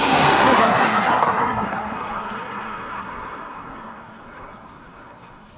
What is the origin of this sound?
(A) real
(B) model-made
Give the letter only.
B